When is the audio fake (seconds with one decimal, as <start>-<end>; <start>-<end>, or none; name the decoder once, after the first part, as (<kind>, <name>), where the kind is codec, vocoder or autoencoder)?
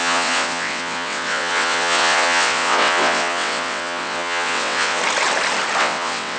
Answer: 0.0-5.0 (vocoder, WaveNeXt); 5.8-6.4